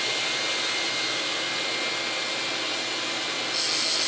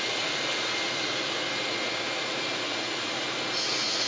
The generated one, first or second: second